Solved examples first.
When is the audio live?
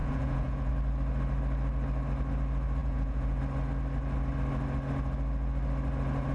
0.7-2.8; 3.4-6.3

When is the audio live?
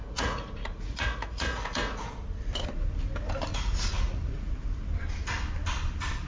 2.1-3.5; 4.5-6.3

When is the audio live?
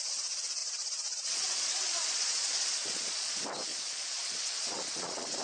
0.0-0.6; 3.3-3.7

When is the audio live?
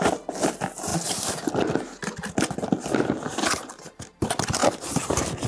0.0-5.5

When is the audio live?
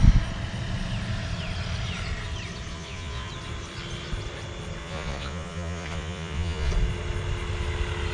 0.0-2.7; 3.3-4.8; 6.7-8.1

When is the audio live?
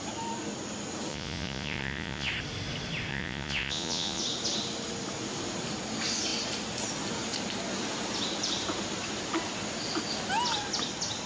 0.0-1.1; 2.3-3.1; 4.2-11.3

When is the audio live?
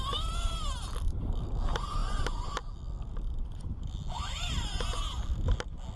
0.0-6.0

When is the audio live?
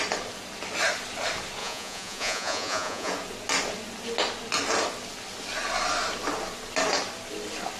0.0-1.6; 3.1-7.8